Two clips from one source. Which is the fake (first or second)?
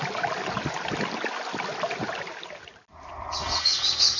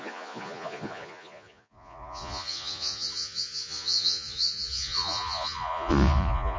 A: second